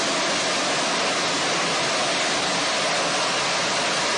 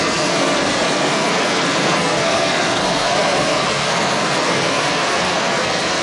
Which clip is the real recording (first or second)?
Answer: first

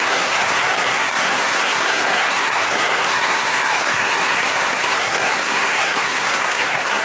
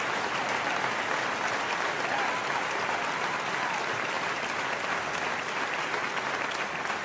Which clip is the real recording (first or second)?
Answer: second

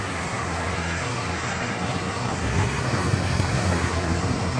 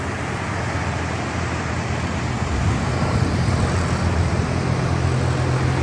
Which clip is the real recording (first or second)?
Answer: second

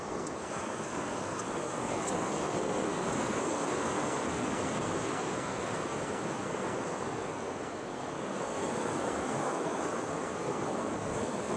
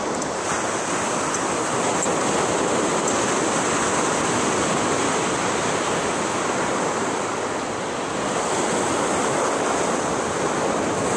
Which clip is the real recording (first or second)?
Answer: second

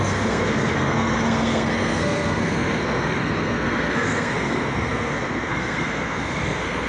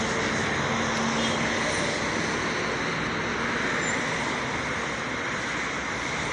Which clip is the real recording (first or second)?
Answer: second